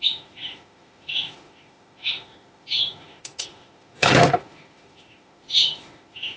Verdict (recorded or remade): remade